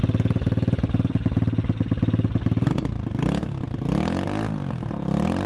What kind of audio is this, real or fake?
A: real